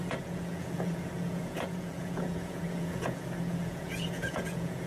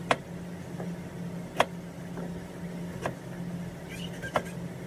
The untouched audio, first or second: second